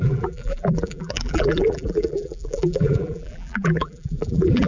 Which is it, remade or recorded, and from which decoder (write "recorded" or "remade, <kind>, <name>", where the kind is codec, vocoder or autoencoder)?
remade, vocoder, BigVGAN v2